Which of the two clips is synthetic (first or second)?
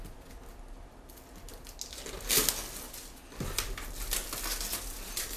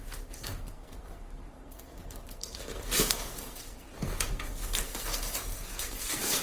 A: second